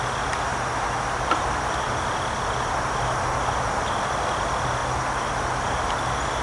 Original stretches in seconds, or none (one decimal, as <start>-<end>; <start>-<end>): 0.0-6.4